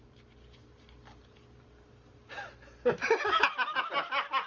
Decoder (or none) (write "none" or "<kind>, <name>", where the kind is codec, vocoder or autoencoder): none